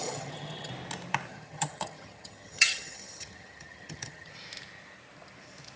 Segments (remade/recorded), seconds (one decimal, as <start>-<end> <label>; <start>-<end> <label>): 0.0-0.7 remade; 0.7-1.3 recorded; 1.3-4.3 remade; 4.3-5.8 recorded